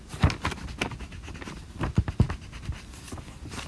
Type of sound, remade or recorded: recorded